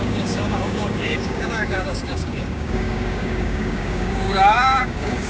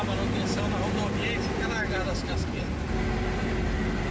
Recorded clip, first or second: second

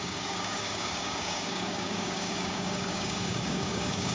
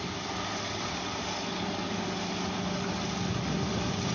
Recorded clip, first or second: second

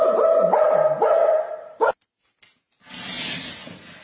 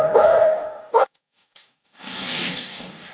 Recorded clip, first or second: first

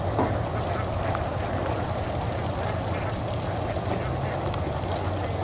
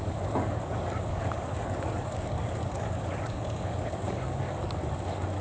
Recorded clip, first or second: first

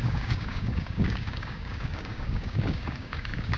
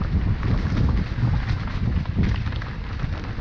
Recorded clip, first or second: second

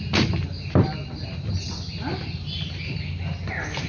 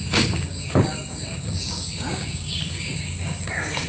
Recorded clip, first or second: first